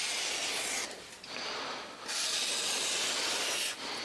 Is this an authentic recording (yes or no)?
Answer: yes